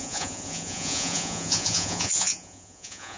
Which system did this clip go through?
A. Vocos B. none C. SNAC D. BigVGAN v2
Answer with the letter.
A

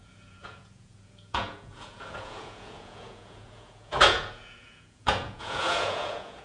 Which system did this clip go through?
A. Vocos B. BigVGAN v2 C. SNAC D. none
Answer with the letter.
A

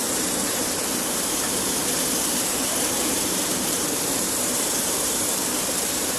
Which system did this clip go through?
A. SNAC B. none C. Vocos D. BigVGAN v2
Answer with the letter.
D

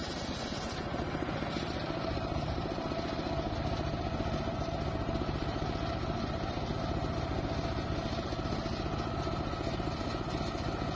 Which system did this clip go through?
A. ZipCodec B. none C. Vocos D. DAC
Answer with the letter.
B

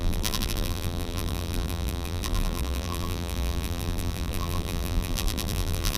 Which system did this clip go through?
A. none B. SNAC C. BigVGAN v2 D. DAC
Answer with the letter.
C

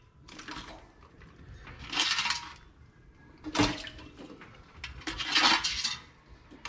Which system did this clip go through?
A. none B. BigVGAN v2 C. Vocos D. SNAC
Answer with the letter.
A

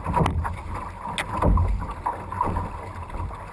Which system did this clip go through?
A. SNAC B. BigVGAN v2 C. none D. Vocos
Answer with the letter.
C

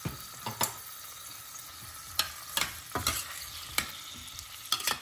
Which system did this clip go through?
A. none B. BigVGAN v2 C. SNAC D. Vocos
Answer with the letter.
A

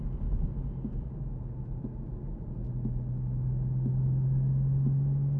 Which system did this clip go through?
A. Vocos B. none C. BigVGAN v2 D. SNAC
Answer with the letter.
B